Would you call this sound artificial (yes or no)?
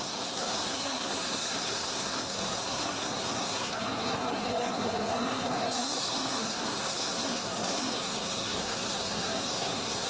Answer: yes